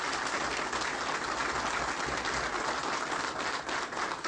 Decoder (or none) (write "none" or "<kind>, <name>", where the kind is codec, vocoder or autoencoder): none